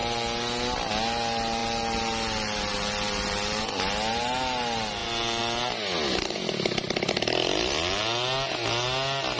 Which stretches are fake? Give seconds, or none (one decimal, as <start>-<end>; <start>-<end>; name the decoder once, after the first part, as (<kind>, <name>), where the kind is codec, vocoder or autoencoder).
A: none